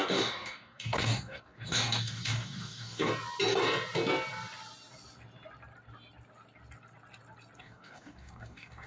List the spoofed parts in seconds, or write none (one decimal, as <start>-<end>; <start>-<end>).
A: 0.0-3.1; 7.6-8.9